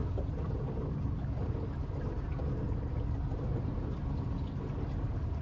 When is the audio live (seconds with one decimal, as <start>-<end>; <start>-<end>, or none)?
0.0-5.4